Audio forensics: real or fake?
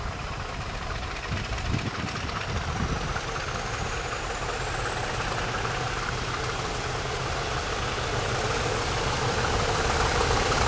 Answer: real